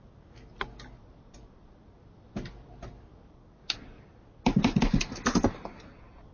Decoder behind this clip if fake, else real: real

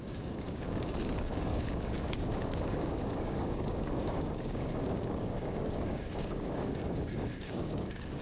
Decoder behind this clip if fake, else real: fake, codec, DAC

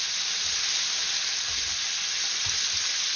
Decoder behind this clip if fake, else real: real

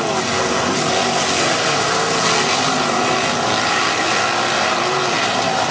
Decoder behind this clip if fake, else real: real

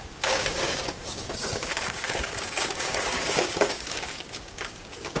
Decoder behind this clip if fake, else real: fake, codec, DAC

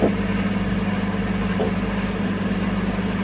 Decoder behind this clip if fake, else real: real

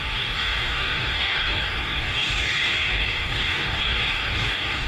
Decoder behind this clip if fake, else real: fake, codec, DAC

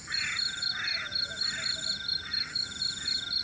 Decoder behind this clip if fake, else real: real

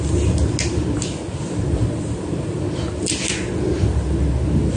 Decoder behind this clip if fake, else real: real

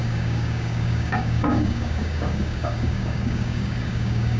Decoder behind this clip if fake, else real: fake, codec, DAC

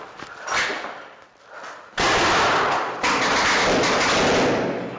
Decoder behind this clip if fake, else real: real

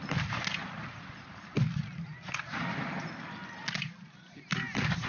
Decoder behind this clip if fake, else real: real